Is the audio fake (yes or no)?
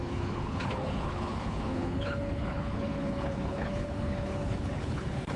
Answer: yes